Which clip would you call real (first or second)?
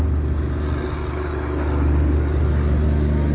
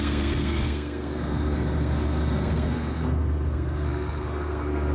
first